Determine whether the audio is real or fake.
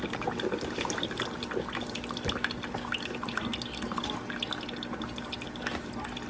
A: real